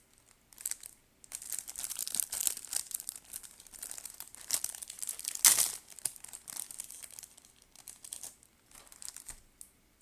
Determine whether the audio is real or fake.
real